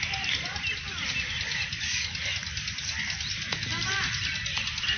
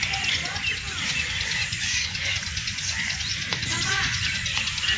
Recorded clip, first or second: first